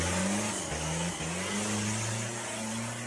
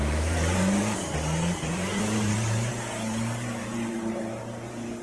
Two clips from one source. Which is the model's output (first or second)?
second